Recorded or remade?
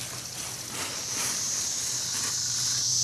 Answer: recorded